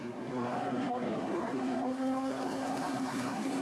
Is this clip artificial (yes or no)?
yes